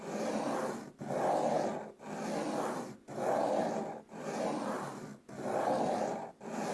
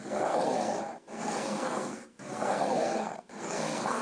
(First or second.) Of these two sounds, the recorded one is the first